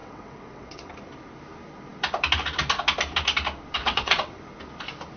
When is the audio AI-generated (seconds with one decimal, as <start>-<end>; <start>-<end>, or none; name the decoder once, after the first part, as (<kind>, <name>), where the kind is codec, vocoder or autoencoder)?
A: 0.0-0.9 (vocoder, WaveNeXt); 3.8-4.4